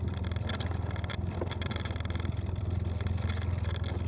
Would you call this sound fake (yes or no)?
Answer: no